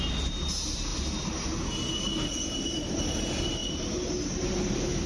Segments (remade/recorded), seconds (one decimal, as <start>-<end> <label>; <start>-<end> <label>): 0.0-0.9 remade; 0.9-2.7 recorded; 2.7-3.6 remade; 3.6-4.2 recorded; 4.2-5.1 remade